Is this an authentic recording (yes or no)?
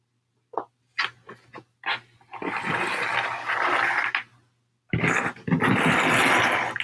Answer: yes